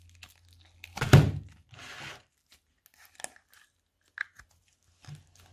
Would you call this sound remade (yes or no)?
no